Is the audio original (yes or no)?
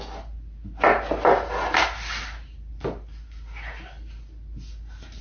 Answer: yes